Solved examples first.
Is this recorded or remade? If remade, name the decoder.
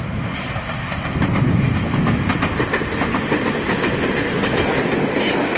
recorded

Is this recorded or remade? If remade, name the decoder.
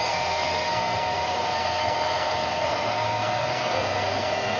remade, codec, SNAC